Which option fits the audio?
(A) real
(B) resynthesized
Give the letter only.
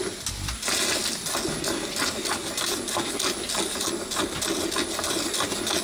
A